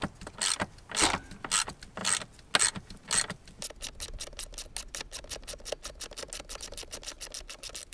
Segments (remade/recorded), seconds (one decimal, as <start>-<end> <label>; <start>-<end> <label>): 0.0-7.9 recorded